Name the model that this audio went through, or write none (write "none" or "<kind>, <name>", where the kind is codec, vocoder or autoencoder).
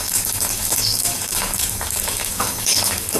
codec, DAC